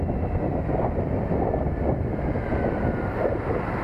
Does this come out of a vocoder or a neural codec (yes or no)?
no